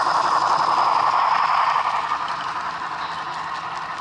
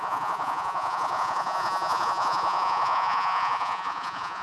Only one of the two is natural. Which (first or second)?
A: first